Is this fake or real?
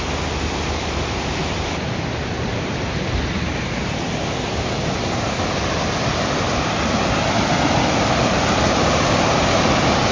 real